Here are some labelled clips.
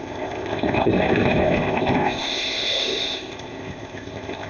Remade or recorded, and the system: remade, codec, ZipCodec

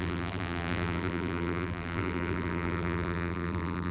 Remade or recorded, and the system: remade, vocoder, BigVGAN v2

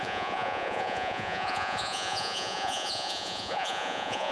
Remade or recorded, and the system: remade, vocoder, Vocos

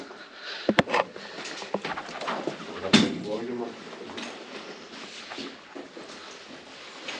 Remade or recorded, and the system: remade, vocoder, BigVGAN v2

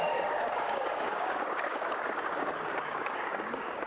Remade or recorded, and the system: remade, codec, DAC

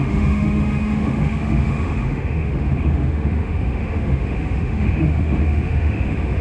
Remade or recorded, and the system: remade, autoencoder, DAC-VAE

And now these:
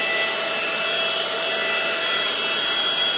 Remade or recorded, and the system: recorded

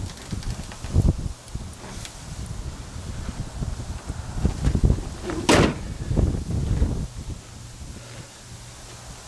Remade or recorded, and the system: recorded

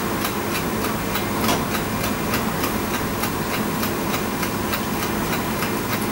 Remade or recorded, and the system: recorded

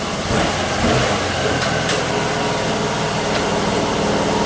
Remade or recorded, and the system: recorded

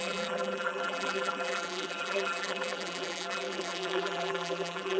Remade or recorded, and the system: remade, vocoder, BigVGAN v2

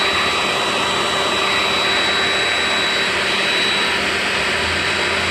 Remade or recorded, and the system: recorded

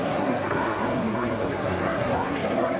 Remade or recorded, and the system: remade, codec, SNAC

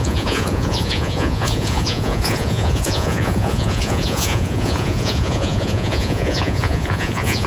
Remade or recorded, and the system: remade, vocoder, Vocos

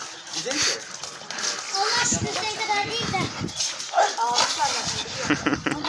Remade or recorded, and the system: recorded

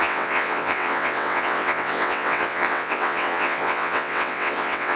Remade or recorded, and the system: remade, vocoder, WaveNeXt